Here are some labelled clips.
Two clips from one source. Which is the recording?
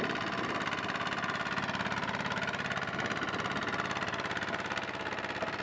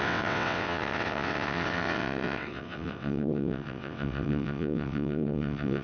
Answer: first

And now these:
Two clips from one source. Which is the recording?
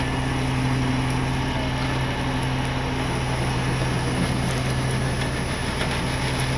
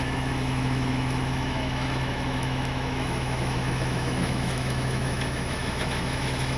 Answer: first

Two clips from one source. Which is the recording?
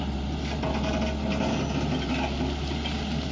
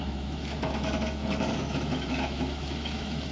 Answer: first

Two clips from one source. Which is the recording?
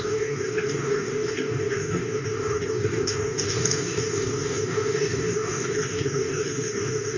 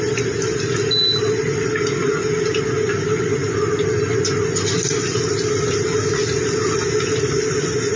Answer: second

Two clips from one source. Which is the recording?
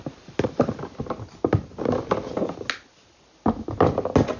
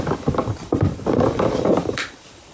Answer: first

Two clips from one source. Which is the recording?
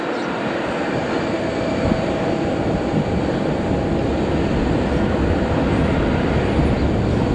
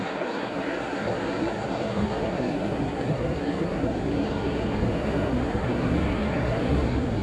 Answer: first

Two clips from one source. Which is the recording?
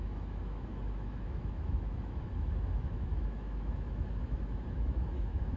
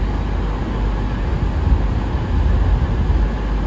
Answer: second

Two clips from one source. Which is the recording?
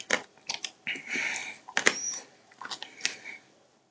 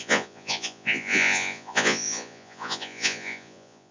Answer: first